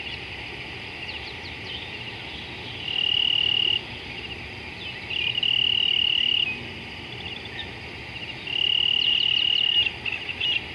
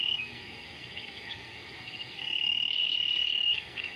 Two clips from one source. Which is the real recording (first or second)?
first